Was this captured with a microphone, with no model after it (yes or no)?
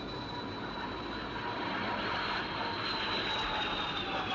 yes